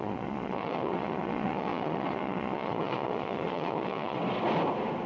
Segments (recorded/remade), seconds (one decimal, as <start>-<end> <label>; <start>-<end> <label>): 0.0-4.2 remade; 4.2-5.1 recorded